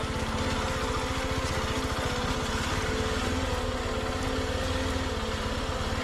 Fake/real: real